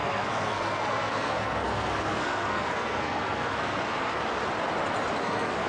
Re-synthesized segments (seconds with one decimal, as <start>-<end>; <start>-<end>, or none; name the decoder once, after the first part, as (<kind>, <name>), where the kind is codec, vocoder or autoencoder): 0.0-4.2 (codec, SNAC); 5.2-5.7

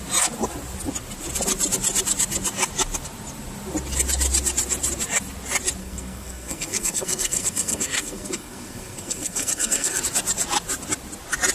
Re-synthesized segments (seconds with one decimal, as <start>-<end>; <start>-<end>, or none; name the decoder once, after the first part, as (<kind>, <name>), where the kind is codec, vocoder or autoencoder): 5.8-10.0 (codec, SNAC)

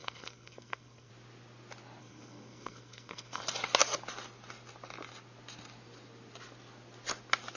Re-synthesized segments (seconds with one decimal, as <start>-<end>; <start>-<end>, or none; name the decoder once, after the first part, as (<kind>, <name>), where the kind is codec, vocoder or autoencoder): 0.0-1.1 (codec, SNAC); 2.0-3.4

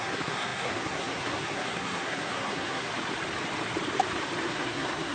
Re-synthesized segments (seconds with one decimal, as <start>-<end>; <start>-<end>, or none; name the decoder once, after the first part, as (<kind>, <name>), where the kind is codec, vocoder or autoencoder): 0.0-2.9 (codec, SNAC); 4.5-5.1